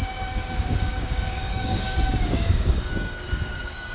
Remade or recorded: remade